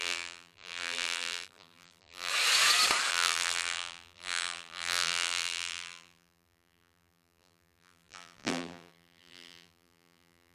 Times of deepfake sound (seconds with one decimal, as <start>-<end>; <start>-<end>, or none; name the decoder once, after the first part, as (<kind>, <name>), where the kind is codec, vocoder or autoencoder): 0.0-2.3 (vocoder, BigVGAN v2); 3.1-10.5